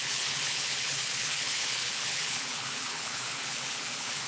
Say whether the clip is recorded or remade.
remade